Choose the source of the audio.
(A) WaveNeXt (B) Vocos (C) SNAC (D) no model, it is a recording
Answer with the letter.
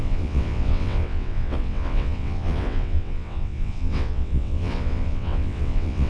A